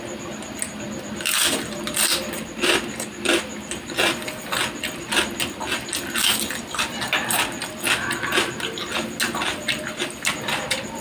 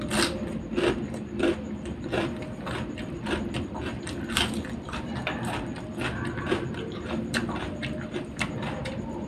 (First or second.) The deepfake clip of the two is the second